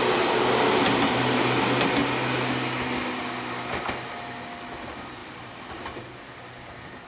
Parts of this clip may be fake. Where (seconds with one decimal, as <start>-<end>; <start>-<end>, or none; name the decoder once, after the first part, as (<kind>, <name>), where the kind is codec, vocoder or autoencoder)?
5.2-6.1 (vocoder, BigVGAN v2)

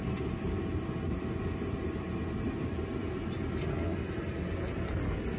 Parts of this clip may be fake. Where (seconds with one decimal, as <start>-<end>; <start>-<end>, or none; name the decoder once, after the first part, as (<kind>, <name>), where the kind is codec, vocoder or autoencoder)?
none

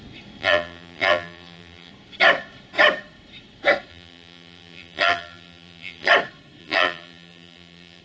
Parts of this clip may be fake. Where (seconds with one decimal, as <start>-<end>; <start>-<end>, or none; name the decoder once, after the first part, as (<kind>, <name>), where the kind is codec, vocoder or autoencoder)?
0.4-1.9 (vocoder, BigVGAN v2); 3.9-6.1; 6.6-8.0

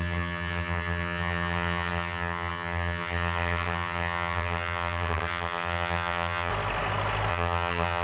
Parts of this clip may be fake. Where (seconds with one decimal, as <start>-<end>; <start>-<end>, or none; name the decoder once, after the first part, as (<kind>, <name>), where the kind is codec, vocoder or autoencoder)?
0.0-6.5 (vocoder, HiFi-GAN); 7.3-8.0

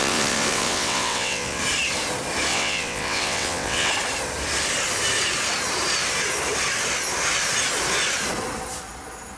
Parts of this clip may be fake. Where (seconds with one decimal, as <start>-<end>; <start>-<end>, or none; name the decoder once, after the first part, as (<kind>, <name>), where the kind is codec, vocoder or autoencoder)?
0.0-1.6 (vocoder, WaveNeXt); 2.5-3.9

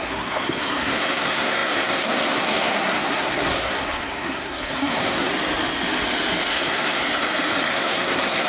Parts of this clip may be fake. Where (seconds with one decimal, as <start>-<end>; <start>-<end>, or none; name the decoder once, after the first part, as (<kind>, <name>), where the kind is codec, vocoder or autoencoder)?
0.0-5.3 (codec, SNAC); 6.5-7.0; 7.7-8.5